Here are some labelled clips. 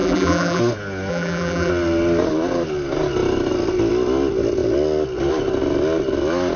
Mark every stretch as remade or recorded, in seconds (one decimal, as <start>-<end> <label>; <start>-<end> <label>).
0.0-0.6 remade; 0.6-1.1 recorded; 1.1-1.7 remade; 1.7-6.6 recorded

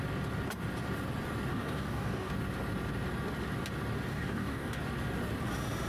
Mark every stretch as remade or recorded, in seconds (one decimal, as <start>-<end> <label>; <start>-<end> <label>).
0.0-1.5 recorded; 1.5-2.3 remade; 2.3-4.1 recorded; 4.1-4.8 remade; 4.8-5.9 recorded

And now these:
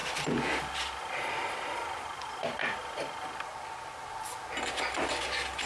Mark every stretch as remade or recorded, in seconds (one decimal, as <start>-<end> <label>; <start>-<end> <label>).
0.0-5.7 recorded